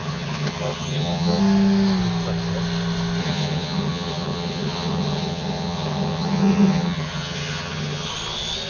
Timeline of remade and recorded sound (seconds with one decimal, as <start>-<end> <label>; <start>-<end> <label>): 0.0-1.4 remade; 1.4-3.2 recorded; 3.2-8.1 remade; 8.1-8.7 recorded